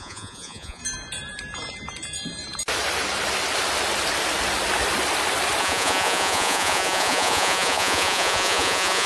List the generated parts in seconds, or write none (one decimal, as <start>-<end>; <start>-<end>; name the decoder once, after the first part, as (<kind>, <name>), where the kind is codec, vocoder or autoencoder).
0.0-0.8 (vocoder, Vocos); 5.6-9.1